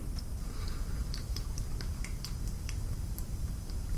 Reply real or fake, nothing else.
fake